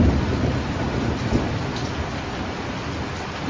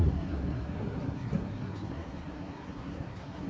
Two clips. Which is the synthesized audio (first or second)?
second